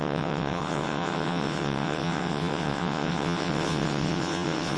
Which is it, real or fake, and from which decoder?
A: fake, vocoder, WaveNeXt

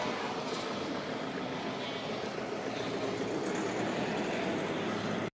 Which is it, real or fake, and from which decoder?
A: real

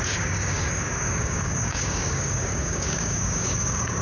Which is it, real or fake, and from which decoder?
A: fake, codec, DAC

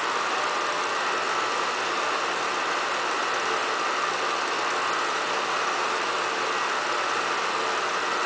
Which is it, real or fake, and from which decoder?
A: real